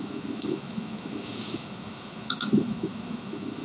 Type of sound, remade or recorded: remade